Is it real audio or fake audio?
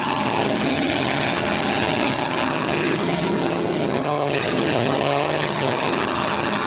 fake